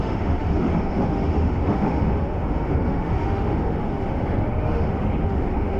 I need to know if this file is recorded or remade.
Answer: remade